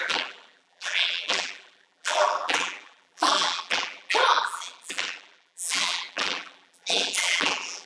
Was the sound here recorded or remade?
remade